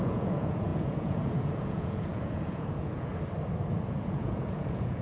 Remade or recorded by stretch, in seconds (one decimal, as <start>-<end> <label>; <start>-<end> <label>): 0.0-3.1 remade; 3.1-3.7 recorded; 3.7-5.0 remade